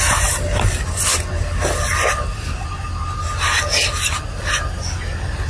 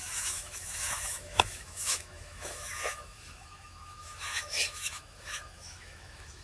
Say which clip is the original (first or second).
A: first